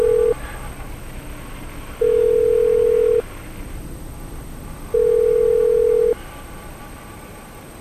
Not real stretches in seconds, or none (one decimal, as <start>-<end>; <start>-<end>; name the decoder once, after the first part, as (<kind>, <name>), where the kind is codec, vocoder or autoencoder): 6.8-7.8 (vocoder, BigVGAN v2)